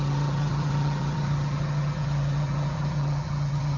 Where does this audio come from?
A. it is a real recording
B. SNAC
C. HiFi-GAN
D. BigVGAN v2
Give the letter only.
C